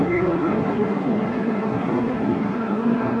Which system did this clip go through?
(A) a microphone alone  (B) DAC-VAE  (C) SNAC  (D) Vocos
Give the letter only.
C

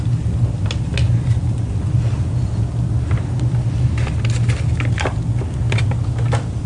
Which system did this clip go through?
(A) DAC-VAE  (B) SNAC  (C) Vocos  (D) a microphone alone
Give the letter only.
D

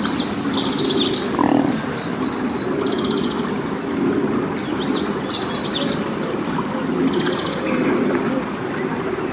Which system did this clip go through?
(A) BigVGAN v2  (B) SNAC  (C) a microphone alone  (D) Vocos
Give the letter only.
C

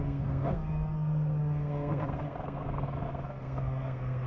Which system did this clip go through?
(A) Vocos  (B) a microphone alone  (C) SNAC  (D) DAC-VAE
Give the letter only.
C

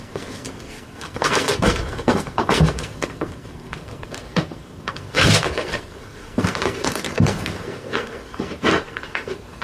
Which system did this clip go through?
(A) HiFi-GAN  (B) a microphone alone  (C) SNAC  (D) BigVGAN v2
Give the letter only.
C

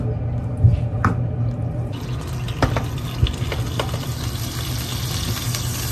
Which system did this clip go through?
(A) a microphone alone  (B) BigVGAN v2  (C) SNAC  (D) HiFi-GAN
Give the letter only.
A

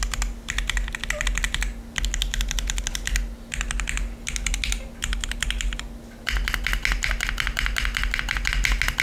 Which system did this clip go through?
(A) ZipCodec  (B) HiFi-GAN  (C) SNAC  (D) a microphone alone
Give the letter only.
D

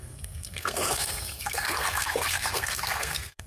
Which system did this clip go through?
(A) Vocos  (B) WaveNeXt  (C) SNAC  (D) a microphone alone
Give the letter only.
C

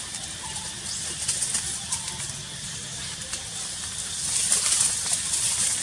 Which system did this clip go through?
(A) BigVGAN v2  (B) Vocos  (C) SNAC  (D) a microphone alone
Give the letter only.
D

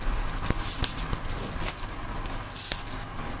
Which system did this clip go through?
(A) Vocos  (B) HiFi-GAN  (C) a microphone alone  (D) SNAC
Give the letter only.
C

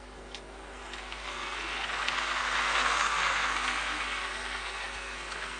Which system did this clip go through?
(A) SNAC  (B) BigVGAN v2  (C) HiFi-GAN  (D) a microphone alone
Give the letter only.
A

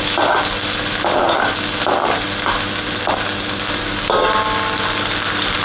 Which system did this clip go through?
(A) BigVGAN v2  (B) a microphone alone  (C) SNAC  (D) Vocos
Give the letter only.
B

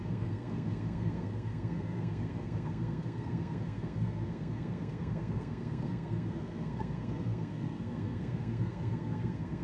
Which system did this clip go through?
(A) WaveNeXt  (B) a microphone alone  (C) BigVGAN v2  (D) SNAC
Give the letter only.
D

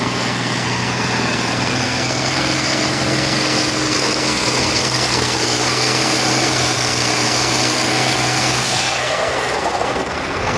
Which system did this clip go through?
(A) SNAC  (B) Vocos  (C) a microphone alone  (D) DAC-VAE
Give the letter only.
A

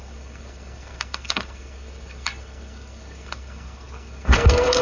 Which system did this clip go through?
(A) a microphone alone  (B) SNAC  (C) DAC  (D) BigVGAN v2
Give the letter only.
B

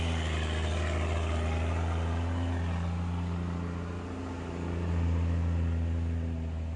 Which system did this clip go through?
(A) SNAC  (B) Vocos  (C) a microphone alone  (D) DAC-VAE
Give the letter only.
C